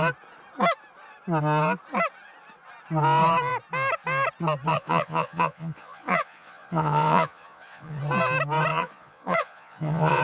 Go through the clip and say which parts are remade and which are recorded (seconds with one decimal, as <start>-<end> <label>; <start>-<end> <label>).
0.0-4.7 recorded; 4.7-8.0 remade; 8.0-8.7 recorded; 8.7-10.2 remade